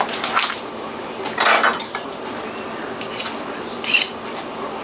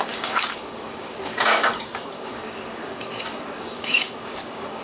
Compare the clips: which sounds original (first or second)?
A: first